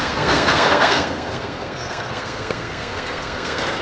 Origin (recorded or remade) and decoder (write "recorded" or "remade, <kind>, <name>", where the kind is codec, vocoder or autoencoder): remade, codec, SNAC